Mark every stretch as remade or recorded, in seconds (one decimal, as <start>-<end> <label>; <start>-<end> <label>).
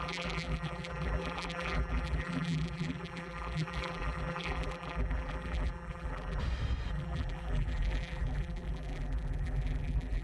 0.0-6.4 remade; 6.4-6.9 recorded; 6.9-10.2 remade